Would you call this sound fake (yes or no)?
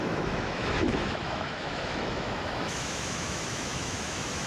yes